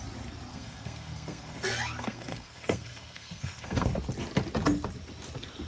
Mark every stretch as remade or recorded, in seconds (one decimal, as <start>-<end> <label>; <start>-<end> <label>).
0.0-0.5 recorded; 0.5-3.9 remade; 3.9-5.7 recorded